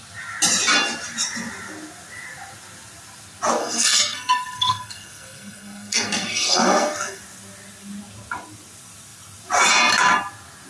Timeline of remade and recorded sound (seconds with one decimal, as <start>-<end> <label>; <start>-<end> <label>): 0.0-3.6 recorded; 3.6-7.2 remade; 7.2-10.7 recorded